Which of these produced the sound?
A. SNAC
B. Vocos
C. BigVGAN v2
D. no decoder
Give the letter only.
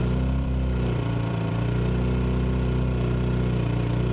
C